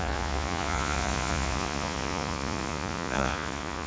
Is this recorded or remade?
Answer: remade